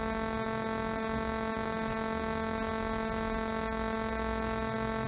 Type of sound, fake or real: real